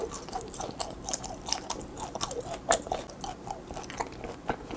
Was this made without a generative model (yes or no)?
yes